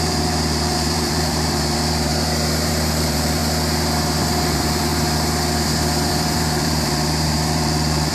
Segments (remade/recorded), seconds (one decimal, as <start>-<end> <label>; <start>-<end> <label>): 0.0-2.1 remade; 2.1-2.7 recorded; 2.7-3.4 remade; 3.4-4.4 recorded; 4.4-4.9 remade; 4.9-6.1 recorded; 6.1-8.1 remade